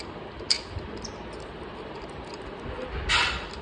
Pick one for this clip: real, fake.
real